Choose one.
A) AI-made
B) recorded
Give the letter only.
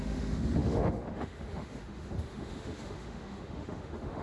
A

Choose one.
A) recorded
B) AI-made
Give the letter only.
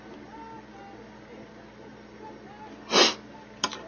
A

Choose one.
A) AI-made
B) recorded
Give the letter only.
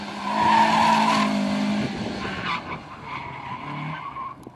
B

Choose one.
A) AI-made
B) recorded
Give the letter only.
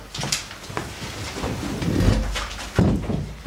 B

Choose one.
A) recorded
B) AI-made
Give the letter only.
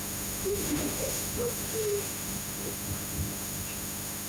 B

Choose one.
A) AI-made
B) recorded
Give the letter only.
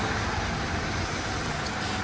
B